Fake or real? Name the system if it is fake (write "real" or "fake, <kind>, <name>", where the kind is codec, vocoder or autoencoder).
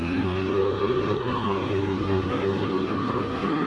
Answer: fake, codec, SNAC